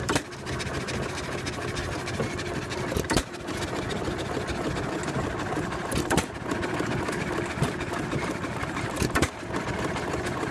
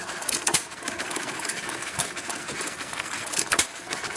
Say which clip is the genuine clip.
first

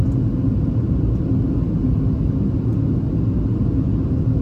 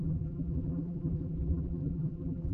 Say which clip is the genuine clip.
first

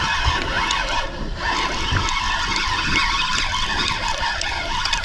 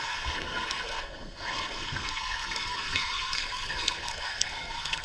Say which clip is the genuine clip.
first